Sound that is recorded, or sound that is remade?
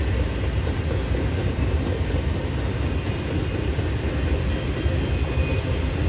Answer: recorded